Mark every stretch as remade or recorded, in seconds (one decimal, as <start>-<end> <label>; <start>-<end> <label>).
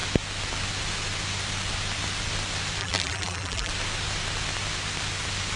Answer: 0.0-2.8 recorded; 2.8-3.7 remade; 3.7-5.6 recorded